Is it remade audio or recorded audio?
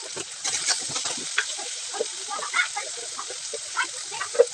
remade